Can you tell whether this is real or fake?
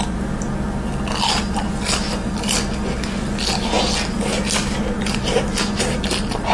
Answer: real